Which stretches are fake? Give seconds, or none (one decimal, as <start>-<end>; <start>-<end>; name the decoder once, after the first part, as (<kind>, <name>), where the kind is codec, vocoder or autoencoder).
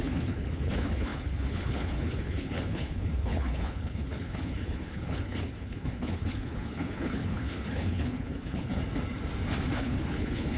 0.0-8.8 (codec, HILCodec); 9.8-10.6